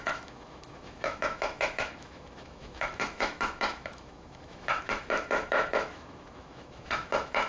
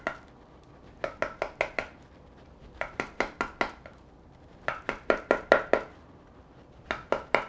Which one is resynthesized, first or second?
first